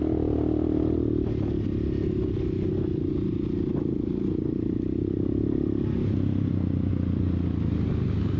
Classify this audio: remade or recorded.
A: recorded